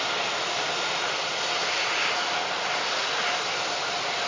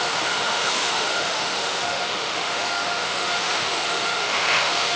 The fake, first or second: second